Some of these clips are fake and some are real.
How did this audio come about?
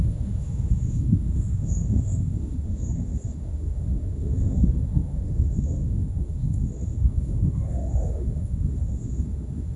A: fake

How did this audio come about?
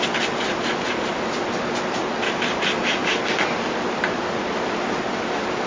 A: fake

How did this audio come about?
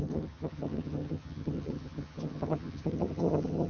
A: fake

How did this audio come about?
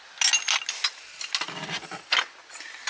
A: real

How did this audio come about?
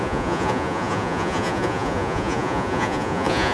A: fake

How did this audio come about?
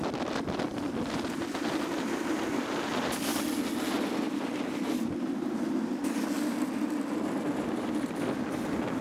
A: real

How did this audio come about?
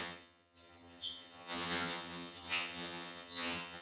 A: fake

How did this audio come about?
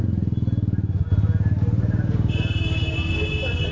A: real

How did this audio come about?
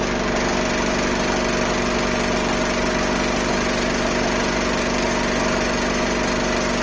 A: real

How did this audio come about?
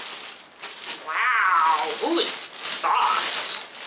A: real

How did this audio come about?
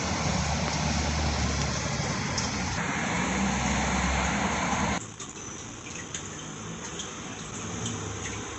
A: real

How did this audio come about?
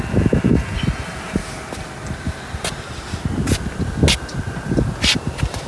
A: real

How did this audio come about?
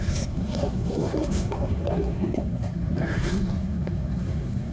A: fake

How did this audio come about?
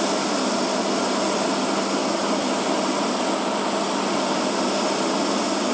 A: real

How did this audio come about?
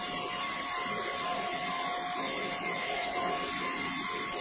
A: real